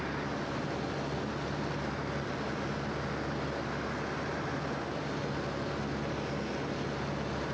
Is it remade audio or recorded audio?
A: recorded